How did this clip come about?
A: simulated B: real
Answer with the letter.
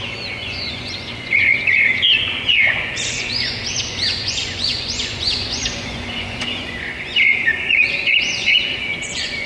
A